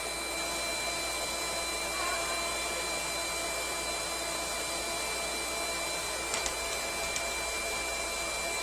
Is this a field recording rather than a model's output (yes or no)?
yes